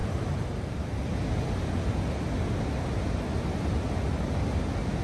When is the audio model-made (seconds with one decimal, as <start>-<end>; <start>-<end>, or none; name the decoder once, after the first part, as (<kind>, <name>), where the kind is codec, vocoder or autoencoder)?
0.0-1.3 (vocoder, BigVGAN v2)

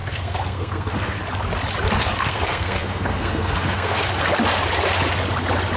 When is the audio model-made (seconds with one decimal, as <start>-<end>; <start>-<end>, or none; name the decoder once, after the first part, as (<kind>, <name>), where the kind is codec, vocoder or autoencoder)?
0.0-1.2 (codec, SNAC); 2.0-4.1

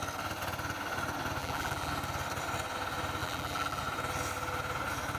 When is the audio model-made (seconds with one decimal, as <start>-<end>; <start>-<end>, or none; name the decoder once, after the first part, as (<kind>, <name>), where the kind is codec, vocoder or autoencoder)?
1.4-1.9 (vocoder, BigVGAN v2); 3.2-3.8

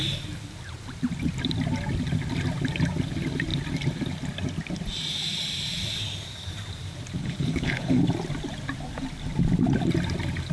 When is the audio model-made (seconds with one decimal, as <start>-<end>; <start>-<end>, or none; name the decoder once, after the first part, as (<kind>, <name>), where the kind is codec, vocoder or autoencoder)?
7.2-8.0 (codec, HILCodec)

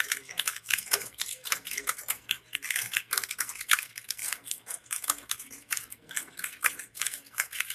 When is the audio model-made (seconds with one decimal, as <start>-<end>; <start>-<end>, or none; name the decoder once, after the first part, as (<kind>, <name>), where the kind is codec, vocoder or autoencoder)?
0.0-7.7 (codec, SNAC)

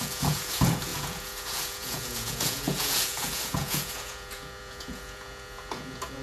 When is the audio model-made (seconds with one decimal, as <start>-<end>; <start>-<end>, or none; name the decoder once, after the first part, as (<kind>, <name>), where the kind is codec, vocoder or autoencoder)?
0.0-6.2 (vocoder, Vocos)

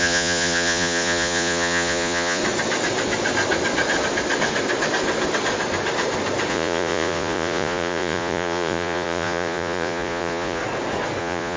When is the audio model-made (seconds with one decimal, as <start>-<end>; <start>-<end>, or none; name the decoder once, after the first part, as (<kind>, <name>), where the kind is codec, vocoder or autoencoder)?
0.0-2.4 (vocoder, Vocos); 6.5-10.6; 11.2-11.6

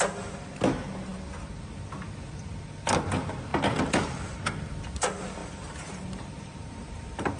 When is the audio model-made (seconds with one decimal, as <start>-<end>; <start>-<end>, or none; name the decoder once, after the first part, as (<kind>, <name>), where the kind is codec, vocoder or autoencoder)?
5.4-7.4 (vocoder, BigVGAN v2)